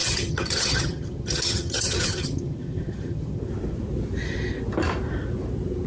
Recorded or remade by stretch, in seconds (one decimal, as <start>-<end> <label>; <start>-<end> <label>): 0.0-3.5 remade; 3.5-5.9 recorded